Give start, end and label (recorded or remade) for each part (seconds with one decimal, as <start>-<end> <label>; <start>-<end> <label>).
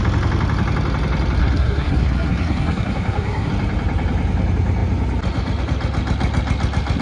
0.0-1.4 recorded; 1.4-3.5 remade; 3.5-7.0 recorded